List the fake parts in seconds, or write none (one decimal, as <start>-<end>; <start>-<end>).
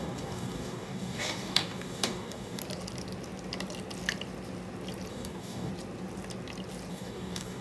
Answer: 0.0-2.6; 5.1-5.7; 6.9-7.6